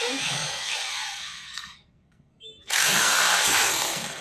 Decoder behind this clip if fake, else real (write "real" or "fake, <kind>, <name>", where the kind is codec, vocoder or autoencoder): fake, codec, SNAC